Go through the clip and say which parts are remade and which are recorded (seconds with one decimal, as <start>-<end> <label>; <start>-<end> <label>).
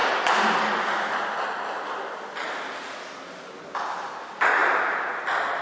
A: 0.0-5.6 recorded